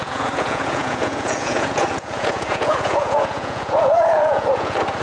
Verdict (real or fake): fake